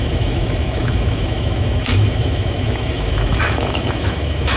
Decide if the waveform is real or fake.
fake